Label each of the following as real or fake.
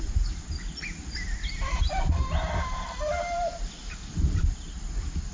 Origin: real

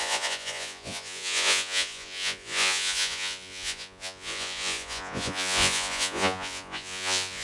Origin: fake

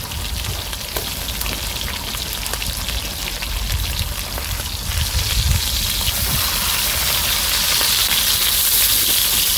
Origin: real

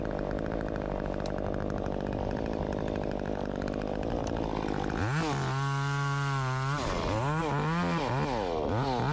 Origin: real